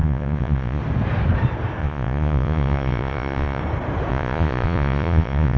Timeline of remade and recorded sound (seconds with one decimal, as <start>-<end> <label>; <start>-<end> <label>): 0.0-0.8 remade; 0.8-1.8 recorded; 1.8-3.6 remade; 3.6-4.1 recorded; 4.1-5.6 remade